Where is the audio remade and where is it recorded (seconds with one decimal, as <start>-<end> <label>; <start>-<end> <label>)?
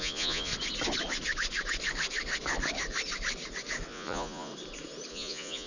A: 0.0-0.5 remade; 0.5-3.9 recorded; 3.9-4.5 remade; 4.5-5.1 recorded; 5.1-5.7 remade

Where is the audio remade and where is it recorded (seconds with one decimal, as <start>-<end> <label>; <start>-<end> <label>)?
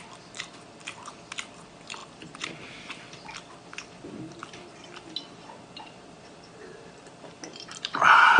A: 0.0-8.4 remade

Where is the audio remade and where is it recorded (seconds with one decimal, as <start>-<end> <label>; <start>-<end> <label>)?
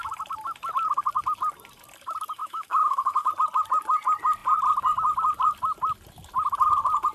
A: 0.0-2.4 recorded; 2.4-3.3 remade; 3.3-7.1 recorded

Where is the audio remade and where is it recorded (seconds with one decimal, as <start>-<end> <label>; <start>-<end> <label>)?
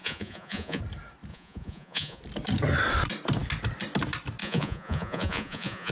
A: 0.0-0.8 remade; 0.8-1.3 recorded; 1.3-2.2 remade; 2.2-4.4 recorded; 4.4-5.9 remade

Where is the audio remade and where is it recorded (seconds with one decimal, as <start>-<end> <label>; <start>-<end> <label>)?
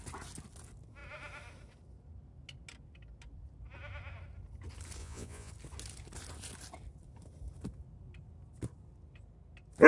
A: 0.0-5.0 recorded; 5.0-5.5 remade; 5.5-9.9 recorded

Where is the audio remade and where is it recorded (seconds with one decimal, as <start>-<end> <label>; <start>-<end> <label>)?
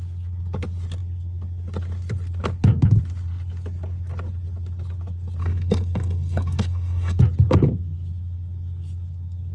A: 0.0-5.4 recorded; 5.4-7.2 remade; 7.2-9.5 recorded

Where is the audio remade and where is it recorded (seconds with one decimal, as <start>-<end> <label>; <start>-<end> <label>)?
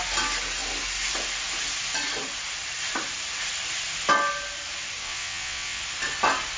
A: 0.0-5.0 recorded; 5.0-5.8 remade; 5.8-6.6 recorded